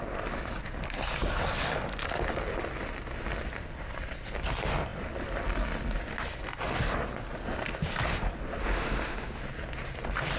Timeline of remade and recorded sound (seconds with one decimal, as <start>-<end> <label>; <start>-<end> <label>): 0.0-8.6 recorded; 8.6-9.4 remade; 9.4-10.4 recorded